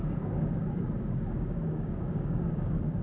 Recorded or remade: remade